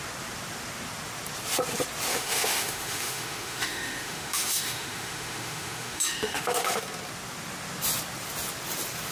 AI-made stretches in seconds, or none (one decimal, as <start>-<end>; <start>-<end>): 2.1-6.8